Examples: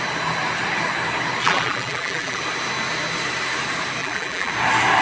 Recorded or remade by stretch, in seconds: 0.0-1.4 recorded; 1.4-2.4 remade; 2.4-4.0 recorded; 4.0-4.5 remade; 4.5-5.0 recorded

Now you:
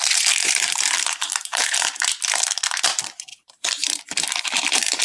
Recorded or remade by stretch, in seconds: 0.0-0.4 recorded; 0.4-2.0 remade; 2.0-3.3 recorded; 3.3-4.0 remade; 4.0-5.0 recorded

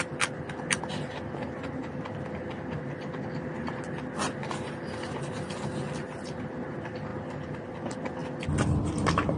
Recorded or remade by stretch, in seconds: 0.0-9.4 recorded